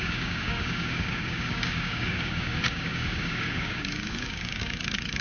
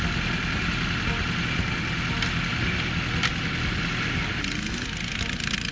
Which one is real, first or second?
second